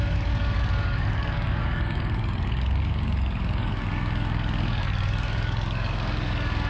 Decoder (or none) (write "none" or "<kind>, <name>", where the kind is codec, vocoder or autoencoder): codec, DAC